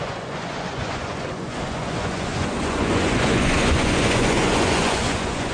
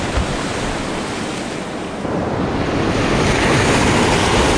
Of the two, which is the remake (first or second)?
first